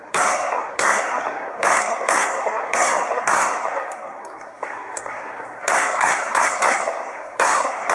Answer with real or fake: fake